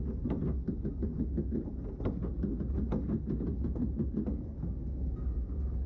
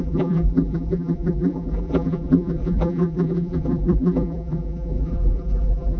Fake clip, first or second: second